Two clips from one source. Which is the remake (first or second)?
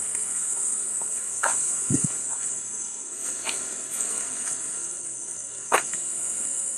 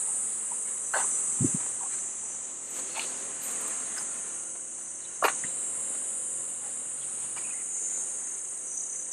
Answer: first